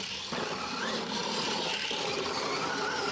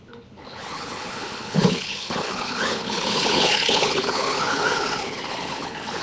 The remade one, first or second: second